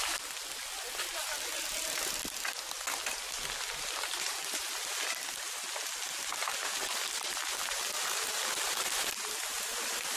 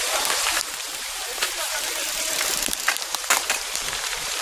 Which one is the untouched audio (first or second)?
first